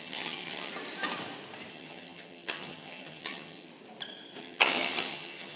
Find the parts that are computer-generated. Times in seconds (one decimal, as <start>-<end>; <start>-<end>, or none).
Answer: 0.0-0.7; 1.7-3.7; 4.4-5.6